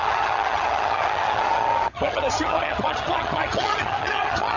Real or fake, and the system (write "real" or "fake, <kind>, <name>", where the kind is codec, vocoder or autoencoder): fake, vocoder, HiFi-GAN